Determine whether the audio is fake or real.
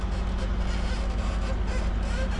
real